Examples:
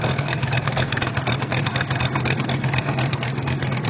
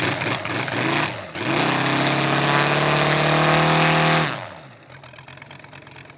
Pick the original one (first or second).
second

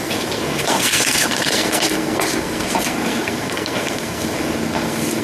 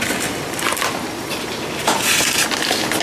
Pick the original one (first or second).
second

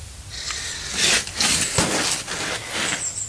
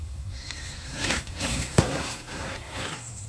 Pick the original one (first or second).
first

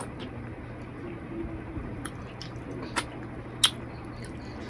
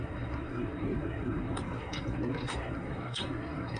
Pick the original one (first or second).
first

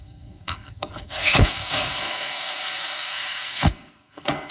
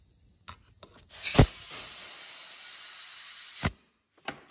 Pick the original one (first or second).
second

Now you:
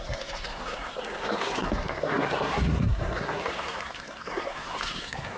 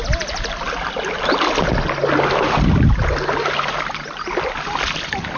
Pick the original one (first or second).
second